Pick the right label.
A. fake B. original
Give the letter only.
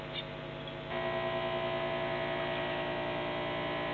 B